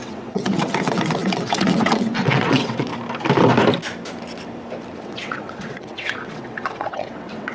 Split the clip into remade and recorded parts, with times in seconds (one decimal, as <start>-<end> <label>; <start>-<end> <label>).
0.0-2.9 remade; 2.9-5.0 recorded; 5.0-7.5 remade